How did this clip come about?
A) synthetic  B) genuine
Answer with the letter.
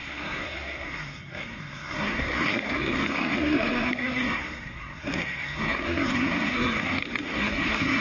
A